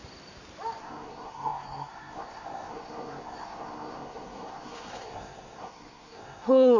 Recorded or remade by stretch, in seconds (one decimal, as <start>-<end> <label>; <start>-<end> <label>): 0.0-0.8 recorded; 0.8-6.8 remade